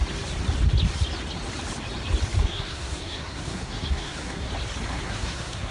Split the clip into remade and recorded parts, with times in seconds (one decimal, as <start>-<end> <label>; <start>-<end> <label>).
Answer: 0.0-2.4 recorded; 2.4-4.5 remade; 4.5-4.9 recorded; 4.9-5.7 remade